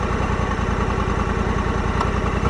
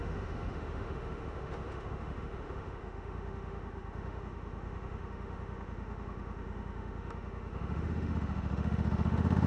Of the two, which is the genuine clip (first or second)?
first